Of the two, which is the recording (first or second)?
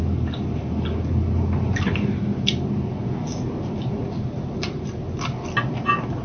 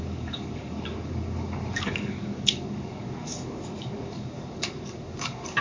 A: first